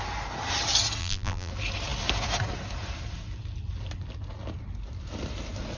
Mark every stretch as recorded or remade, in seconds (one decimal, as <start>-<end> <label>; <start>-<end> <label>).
0.0-1.0 recorded; 1.0-1.5 remade; 1.5-5.8 recorded